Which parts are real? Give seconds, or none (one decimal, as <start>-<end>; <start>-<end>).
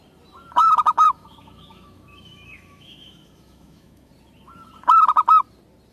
0.0-0.6; 4.1-5.9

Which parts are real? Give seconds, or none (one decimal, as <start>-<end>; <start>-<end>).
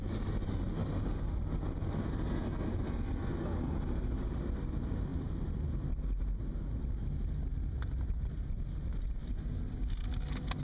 0.0-10.6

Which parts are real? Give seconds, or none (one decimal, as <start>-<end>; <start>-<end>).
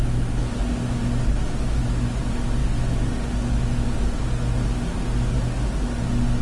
0.0-6.4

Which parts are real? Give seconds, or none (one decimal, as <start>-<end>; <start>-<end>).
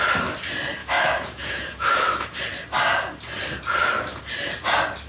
0.0-0.8; 2.4-5.1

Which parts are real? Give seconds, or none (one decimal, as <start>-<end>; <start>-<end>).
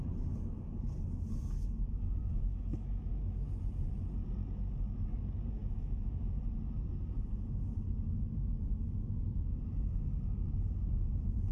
0.0-2.2; 3.1-5.6; 6.2-11.5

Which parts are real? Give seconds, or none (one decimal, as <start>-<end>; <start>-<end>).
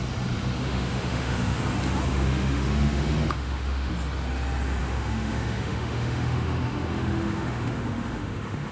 0.0-0.6; 1.6-2.1; 3.9-4.8